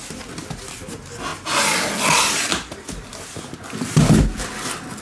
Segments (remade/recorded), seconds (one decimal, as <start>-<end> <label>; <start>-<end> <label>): 0.0-5.0 recorded